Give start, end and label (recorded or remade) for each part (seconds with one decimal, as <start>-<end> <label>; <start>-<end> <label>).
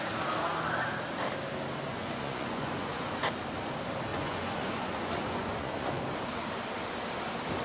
0.0-1.9 recorded; 1.9-3.1 remade; 3.1-4.1 recorded; 4.1-5.9 remade; 5.9-7.6 recorded